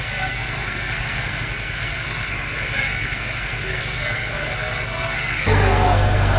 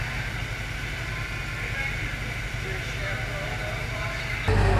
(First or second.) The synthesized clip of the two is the first